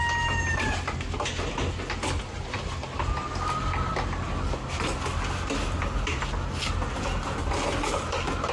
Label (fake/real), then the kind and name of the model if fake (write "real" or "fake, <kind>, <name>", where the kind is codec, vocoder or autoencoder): real